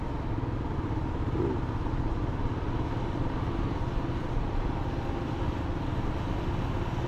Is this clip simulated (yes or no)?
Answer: no